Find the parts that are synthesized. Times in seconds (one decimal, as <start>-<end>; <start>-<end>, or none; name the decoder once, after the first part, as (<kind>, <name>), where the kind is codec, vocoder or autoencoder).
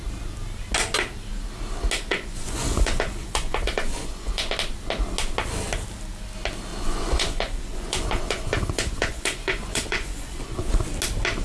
2.1-4.5 (vocoder, Vocos); 6.7-10.7